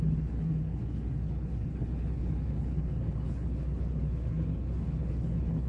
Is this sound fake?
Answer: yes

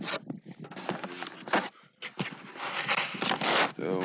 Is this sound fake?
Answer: no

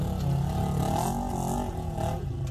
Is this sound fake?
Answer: no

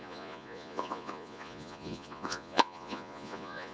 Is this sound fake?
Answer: yes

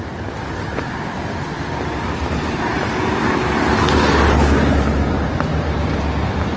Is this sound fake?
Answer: no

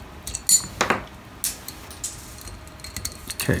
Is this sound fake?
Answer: no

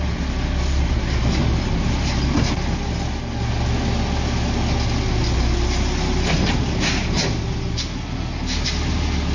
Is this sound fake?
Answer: no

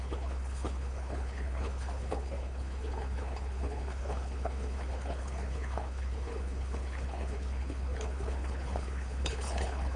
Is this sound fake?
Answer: yes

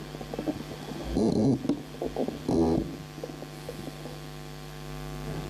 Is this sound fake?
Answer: no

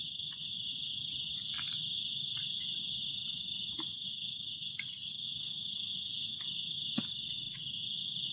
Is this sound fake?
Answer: no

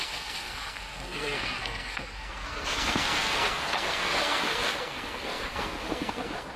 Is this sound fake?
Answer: yes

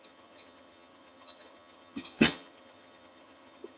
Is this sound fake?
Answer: yes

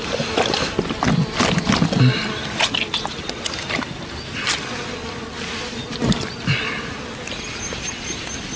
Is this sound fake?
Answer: no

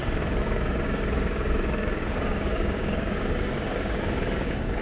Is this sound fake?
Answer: yes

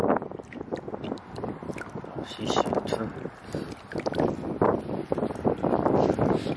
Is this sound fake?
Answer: no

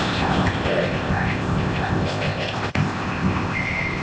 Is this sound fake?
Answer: yes